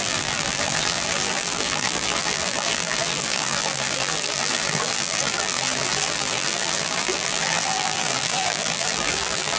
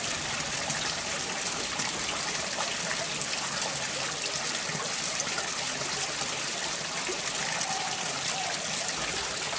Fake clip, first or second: first